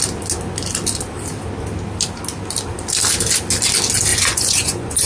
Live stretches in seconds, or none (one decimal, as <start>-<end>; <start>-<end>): 0.0-4.1